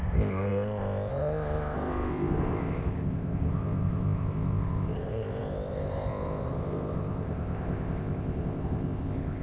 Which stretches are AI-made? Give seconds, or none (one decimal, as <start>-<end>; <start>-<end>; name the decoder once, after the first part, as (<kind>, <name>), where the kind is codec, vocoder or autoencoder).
0.0-9.4 (codec, ZipCodec)